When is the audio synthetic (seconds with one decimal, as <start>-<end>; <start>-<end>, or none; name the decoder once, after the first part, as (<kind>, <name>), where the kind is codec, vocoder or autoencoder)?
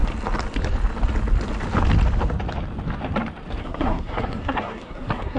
3.6-5.4 (codec, SNAC)